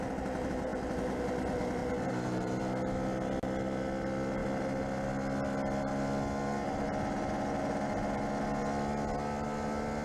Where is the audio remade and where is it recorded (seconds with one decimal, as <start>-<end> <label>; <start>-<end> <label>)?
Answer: 0.0-1.8 recorded; 1.8-2.6 remade; 2.6-10.0 recorded